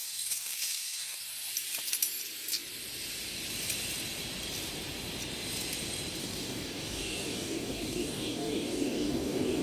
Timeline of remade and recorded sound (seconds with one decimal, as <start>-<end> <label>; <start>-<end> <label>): 0.0-1.2 remade; 1.2-6.2 recorded; 6.2-9.6 remade